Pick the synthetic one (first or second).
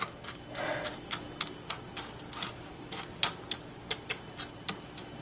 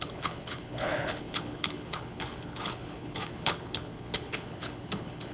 second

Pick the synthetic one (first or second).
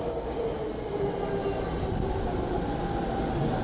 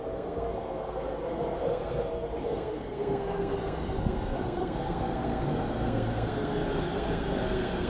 second